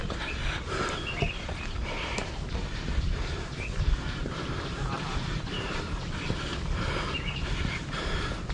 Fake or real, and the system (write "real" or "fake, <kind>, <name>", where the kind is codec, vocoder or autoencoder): fake, vocoder, BigVGAN v2